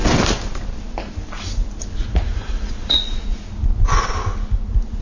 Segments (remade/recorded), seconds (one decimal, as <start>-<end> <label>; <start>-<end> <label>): 0.0-1.9 recorded; 1.9-3.6 remade; 3.6-5.0 recorded